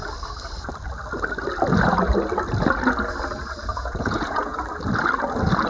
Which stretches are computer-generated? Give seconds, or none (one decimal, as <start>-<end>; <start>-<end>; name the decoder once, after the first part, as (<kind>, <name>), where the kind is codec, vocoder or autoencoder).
3.7-4.6 (vocoder, Vocos)